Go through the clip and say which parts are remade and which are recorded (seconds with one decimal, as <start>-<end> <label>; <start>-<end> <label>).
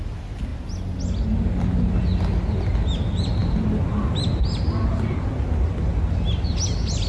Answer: 0.0-7.1 recorded